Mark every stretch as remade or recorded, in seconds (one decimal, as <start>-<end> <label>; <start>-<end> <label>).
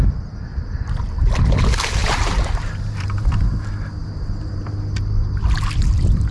0.0-0.5 recorded; 0.5-1.0 remade; 1.0-2.0 recorded; 2.0-3.5 remade; 3.5-4.0 recorded; 4.0-4.7 remade; 4.7-6.3 recorded